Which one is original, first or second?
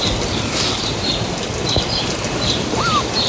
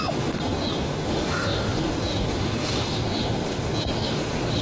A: first